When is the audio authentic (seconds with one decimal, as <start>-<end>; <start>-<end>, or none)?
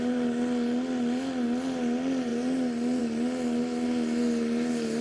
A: 0.0-5.0